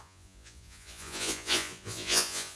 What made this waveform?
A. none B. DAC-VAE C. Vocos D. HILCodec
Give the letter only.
C